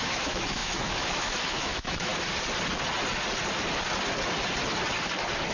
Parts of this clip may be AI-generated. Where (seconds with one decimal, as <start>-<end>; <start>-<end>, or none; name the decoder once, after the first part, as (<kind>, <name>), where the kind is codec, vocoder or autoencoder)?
0.0-2.1 (autoencoder, DAC-VAE)